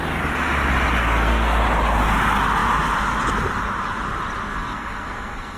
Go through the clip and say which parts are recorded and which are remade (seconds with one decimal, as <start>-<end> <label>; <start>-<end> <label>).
0.0-1.0 recorded; 1.0-1.6 remade; 1.6-4.5 recorded; 4.5-5.6 remade

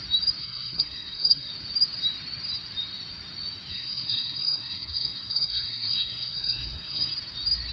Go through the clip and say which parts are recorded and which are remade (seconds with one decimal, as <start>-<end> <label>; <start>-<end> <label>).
0.0-0.4 recorded; 0.4-1.5 remade; 1.5-3.7 recorded; 3.7-7.1 remade; 7.1-7.7 recorded

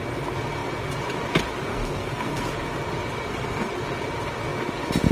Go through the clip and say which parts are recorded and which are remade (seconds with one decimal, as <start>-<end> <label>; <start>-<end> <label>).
0.0-1.7 recorded; 1.7-2.5 remade; 2.5-3.3 recorded; 3.3-3.8 remade; 3.8-5.1 recorded

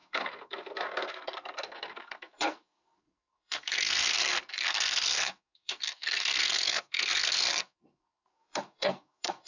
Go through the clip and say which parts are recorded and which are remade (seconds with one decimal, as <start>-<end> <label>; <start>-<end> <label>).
0.0-9.5 remade

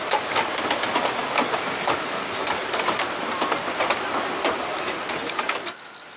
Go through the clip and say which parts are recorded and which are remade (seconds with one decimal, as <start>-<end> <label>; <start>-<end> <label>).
0.0-6.2 recorded